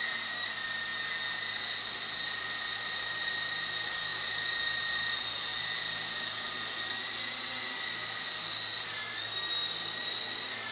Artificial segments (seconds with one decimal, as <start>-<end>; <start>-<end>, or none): none